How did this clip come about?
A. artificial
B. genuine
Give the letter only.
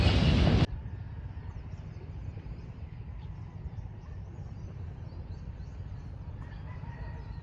B